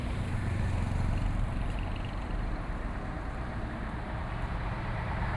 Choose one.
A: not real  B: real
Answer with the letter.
A